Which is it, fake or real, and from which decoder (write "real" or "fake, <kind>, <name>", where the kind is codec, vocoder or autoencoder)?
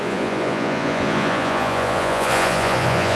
fake, vocoder, Vocos